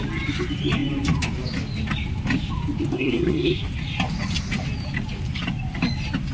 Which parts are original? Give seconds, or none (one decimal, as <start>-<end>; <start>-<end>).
0.0-2.9; 3.7-6.3